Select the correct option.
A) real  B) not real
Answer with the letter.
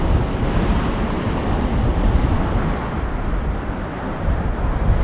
A